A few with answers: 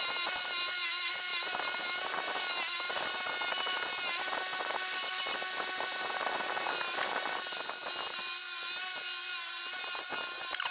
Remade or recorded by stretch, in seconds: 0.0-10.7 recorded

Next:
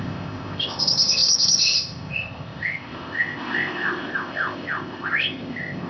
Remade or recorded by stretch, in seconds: 0.0-5.9 remade

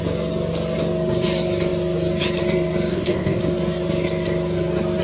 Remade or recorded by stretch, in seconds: 0.0-2.9 recorded; 2.9-3.4 remade; 3.4-5.0 recorded

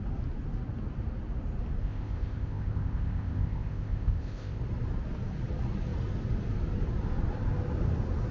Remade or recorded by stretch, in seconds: 0.0-1.8 recorded; 1.8-4.6 remade; 4.6-8.3 recorded